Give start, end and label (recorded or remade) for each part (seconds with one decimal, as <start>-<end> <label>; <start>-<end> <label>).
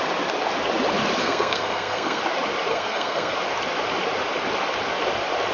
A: 0.0-1.2 recorded; 1.2-2.2 remade; 2.2-2.7 recorded; 2.7-3.3 remade; 3.3-5.5 recorded